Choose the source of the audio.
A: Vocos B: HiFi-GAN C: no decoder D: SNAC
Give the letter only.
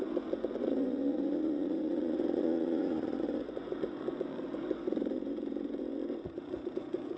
A